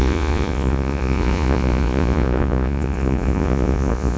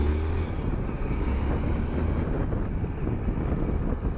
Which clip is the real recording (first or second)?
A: second